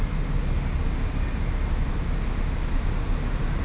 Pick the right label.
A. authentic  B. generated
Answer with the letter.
A